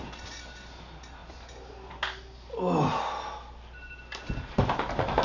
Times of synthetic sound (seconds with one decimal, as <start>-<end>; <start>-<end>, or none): none